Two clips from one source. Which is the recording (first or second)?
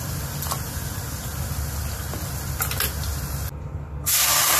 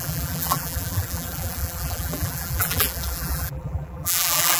first